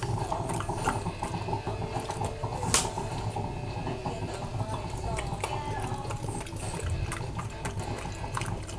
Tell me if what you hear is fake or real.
real